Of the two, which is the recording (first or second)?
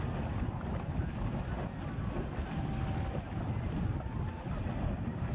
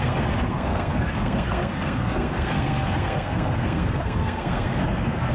first